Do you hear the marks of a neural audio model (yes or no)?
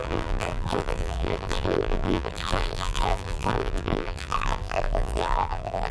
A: yes